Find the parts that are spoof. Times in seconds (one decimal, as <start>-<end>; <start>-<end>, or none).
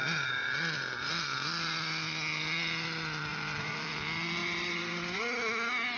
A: 0.0-1.1; 3.3-3.9; 4.4-5.2